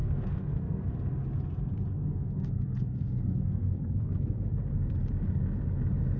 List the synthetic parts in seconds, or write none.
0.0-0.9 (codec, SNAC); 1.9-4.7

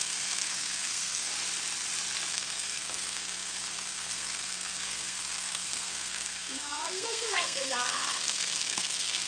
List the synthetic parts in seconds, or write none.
0.0-1.3 (codec, SNAC); 2.3-9.3

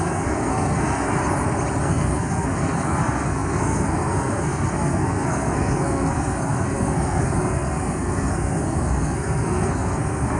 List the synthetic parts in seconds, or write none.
0.0-1.2 (codec, SNAC); 1.8-10.4

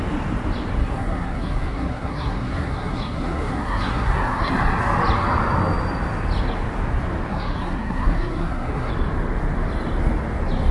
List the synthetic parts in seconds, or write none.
0.8-4.5 (codec, SNAC); 7.3-8.9

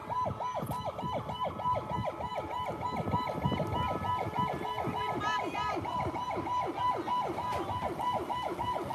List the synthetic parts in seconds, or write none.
none

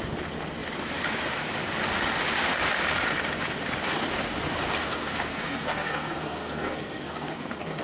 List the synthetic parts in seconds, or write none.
4.8-7.8 (codec, SNAC)